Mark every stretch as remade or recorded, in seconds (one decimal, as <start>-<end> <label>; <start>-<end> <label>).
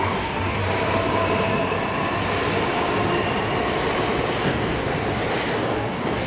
0.0-0.6 remade; 0.6-4.4 recorded; 4.4-4.9 remade; 4.9-5.5 recorded; 5.5-6.3 remade